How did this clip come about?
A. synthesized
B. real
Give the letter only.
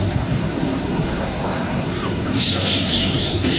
A